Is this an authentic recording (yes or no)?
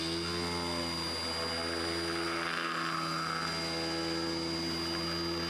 yes